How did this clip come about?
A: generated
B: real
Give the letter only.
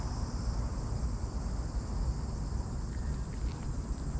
A